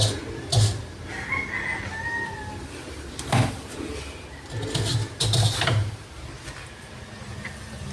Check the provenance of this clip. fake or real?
real